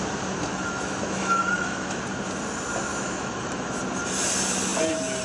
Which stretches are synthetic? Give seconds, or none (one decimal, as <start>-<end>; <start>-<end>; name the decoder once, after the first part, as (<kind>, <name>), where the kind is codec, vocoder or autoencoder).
0.5-2.0 (autoencoder, DAC-VAE); 2.9-3.8